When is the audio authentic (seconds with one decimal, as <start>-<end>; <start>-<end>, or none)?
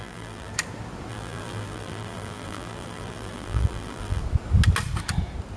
0.5-1.1; 4.2-5.6